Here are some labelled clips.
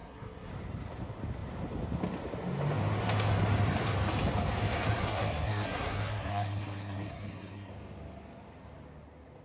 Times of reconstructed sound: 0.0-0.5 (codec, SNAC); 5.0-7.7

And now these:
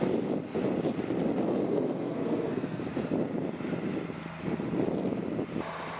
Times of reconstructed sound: 1.5-2.8 (codec, SNAC)

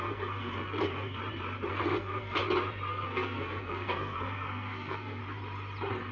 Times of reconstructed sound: 0.0-1.2 (codec, SNAC); 1.7-2.4; 2.9-5.2

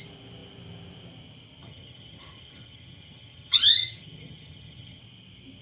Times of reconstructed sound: 1.6-5.0 (vocoder, HiFi-GAN)

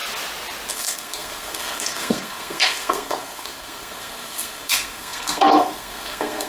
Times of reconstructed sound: 0.7-6.5 (codec, SNAC)

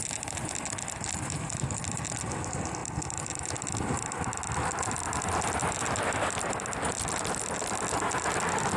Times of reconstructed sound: none